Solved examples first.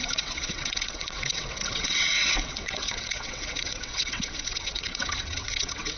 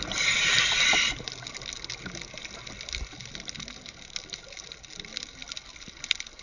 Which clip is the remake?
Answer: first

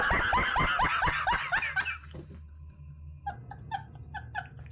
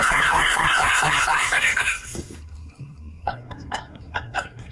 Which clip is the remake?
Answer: second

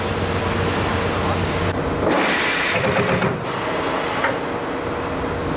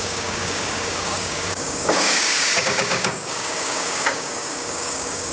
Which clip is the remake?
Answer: second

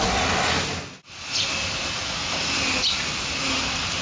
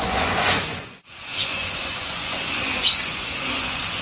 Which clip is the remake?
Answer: second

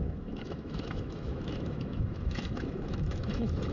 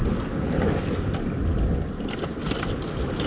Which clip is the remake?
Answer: first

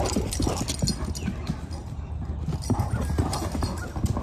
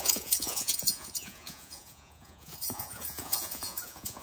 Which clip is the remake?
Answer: second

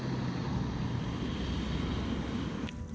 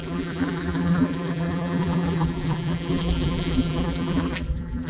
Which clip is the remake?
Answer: second